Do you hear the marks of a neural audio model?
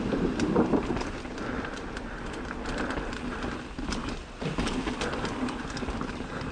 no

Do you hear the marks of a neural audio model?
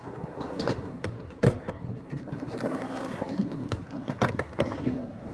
yes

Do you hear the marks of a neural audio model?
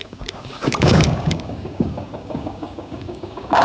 yes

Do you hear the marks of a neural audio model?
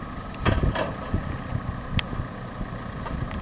no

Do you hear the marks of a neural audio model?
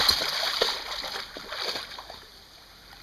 no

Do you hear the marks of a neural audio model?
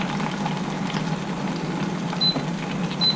no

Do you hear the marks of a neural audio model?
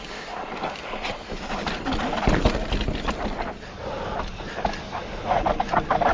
no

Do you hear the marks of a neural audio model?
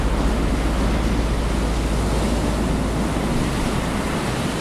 no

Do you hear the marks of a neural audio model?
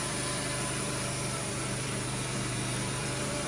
yes